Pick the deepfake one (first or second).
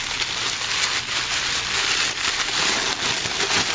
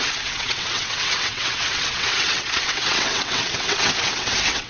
second